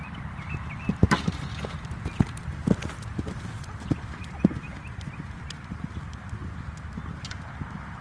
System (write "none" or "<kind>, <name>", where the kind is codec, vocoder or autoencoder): none